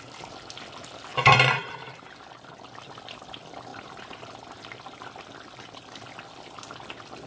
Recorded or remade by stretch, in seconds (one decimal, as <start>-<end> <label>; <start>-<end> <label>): 0.0-1.1 recorded; 1.1-1.7 remade; 1.7-3.7 recorded; 3.7-4.6 remade; 4.6-7.3 recorded